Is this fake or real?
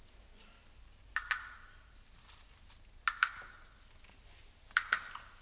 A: real